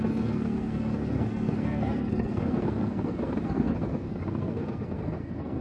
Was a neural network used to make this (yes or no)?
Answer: yes